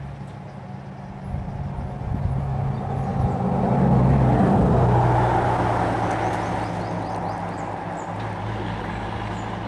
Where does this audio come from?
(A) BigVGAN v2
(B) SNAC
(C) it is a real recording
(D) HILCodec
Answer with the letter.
C